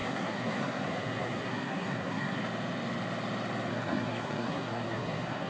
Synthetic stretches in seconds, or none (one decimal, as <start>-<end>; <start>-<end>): 0.0-2.4; 3.7-5.5